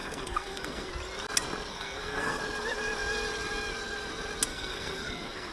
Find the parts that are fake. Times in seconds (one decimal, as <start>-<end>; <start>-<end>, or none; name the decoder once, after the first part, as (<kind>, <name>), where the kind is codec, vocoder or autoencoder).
0.0-0.9 (codec, SNAC); 1.7-2.4; 4.5-5.5